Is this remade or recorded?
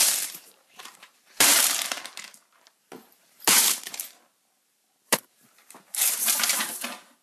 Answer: remade